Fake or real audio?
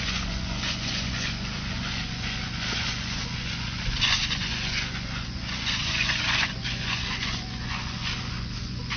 fake